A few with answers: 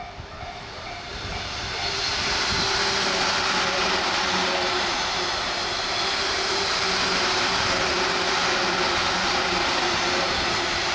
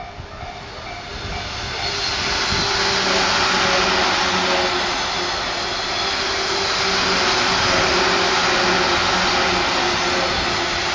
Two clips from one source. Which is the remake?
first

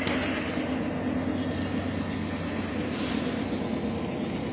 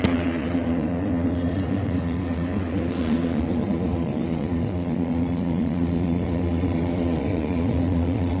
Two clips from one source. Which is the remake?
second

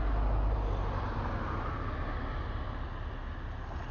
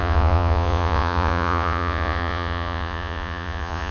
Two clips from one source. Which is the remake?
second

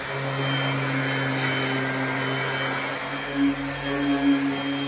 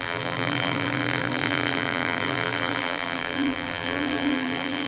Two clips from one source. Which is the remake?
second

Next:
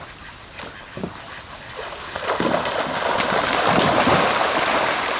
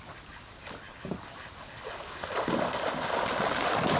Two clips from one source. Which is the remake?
first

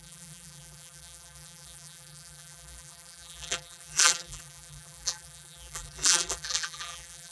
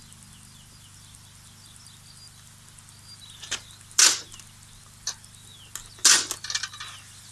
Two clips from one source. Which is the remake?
first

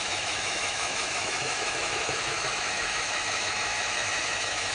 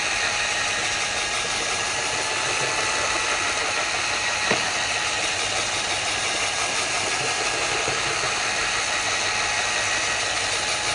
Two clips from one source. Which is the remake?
first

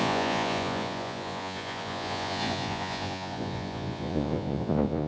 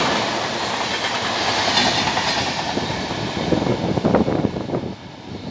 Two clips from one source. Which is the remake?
first